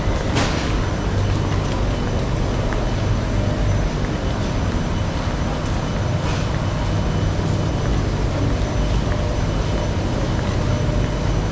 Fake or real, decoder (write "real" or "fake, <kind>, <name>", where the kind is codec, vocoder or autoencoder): real